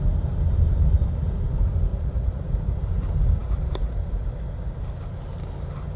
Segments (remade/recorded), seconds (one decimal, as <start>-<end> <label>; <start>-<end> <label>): 0.0-1.9 recorded; 1.9-2.8 remade; 2.8-6.0 recorded